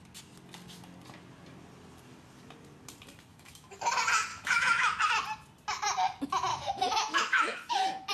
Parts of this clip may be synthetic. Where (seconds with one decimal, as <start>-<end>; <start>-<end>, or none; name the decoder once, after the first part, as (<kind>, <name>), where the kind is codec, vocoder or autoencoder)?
3.3-3.9 (autoencoder, DAC-VAE); 4.3-5.0; 6.5-8.1